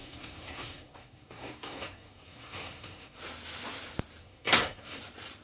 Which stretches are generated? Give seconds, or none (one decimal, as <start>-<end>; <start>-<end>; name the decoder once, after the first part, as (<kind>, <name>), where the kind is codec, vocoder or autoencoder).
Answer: 0.0-3.2 (codec, SNAC); 4.2-5.0